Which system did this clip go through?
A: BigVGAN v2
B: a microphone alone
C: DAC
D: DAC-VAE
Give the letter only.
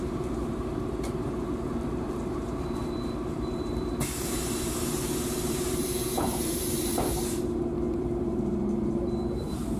A